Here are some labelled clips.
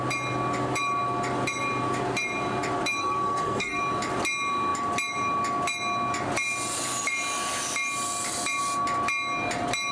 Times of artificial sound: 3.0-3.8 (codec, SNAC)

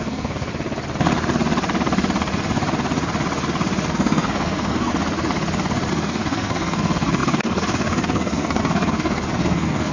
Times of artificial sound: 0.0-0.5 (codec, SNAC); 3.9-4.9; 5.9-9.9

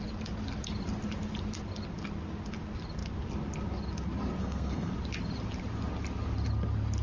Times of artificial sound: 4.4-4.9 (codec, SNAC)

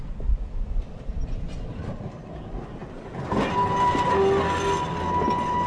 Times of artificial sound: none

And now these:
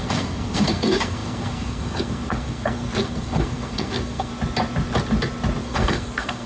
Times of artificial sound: 0.0-4.3 (codec, SNAC); 5.6-6.5

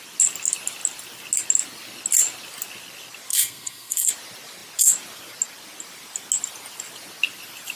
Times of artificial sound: 3.3-4.1 (codec, SNAC)

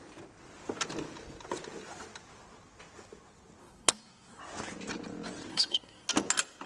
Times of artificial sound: 3.6-4.4 (codec, SNAC); 5.5-6.1

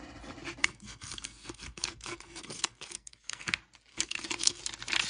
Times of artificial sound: 0.6-3.5 (codec, SNAC); 3.9-4.6